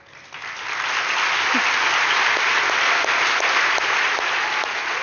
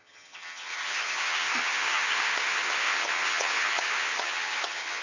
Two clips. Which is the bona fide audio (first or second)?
first